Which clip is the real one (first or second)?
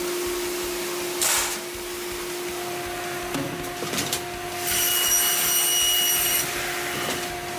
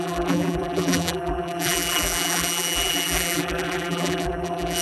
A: first